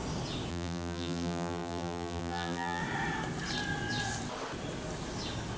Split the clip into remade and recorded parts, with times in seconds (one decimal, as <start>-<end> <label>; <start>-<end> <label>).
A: 0.0-0.5 recorded; 0.5-2.8 remade; 2.8-5.6 recorded